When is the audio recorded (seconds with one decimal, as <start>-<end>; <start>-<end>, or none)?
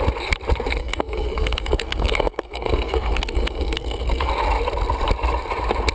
0.0-0.8; 4.3-5.9